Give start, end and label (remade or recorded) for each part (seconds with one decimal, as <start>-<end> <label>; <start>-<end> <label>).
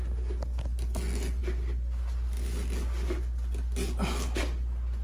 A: 0.0-5.0 recorded